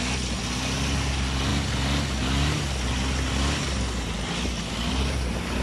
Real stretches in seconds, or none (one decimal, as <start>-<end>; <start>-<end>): 0.0-5.6